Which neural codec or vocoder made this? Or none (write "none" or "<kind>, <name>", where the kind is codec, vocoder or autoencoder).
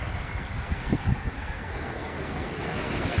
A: codec, SNAC